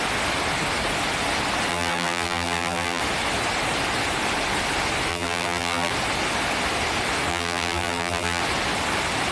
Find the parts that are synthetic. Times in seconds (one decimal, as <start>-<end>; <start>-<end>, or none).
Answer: 1.7-3.0; 5.1-5.9; 7.3-8.4